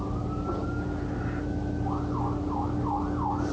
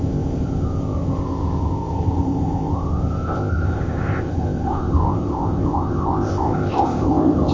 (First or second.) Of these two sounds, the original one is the first